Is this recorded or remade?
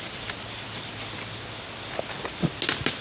recorded